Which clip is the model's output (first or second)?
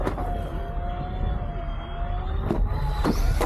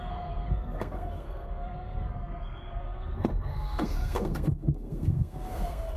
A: second